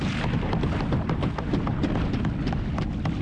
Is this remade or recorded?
recorded